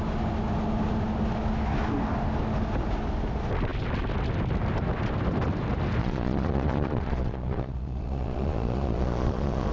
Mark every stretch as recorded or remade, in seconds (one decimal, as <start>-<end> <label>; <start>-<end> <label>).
0.0-6.0 recorded; 6.0-9.7 remade